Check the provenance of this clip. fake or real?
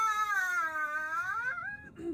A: fake